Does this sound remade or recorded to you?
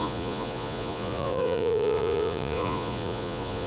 remade